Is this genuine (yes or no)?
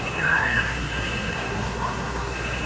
no